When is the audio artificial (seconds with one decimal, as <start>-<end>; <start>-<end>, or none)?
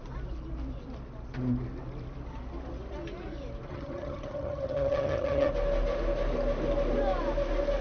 3.7-5.5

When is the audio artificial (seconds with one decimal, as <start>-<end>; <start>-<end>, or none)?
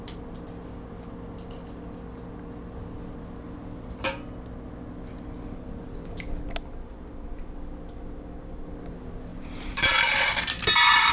9.3-10.3